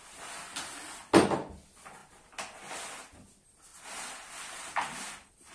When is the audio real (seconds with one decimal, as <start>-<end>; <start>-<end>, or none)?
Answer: 0.0-5.5